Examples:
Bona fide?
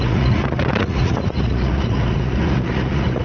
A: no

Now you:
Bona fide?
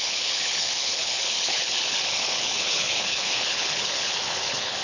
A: no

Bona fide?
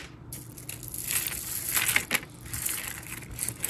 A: yes